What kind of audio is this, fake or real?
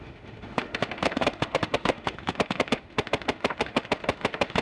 fake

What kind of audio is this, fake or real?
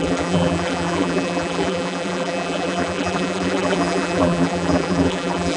fake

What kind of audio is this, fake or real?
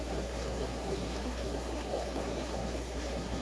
fake